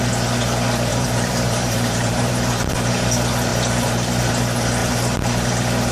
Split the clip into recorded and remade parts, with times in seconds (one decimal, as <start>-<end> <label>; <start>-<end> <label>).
0.0-0.9 recorded; 0.9-2.3 remade; 2.3-3.5 recorded; 3.5-4.3 remade; 4.3-5.9 recorded